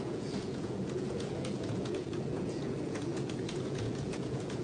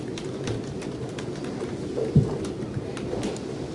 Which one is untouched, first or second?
second